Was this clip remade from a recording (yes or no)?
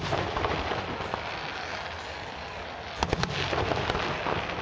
no